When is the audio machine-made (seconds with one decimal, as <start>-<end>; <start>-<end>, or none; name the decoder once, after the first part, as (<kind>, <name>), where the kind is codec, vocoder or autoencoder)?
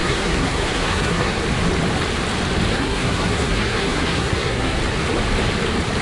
0.0-1.4 (codec, SNAC); 2.7-4.8